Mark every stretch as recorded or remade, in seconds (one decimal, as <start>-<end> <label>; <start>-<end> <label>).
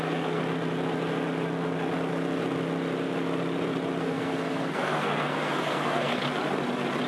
0.0-0.4 remade; 0.4-4.0 recorded; 4.0-6.2 remade; 6.2-7.1 recorded